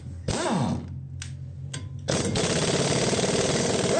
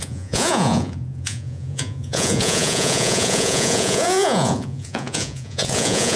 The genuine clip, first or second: first